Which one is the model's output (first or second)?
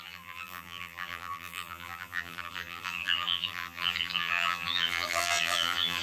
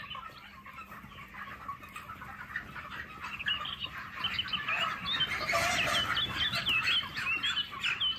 first